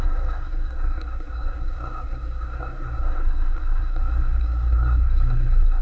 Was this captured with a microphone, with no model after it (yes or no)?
no